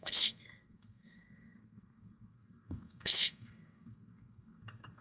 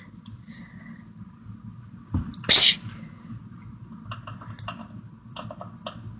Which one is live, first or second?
second